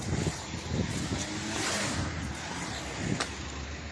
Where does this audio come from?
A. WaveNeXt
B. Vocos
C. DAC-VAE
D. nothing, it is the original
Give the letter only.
D